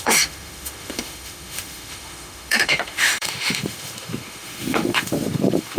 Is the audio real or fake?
fake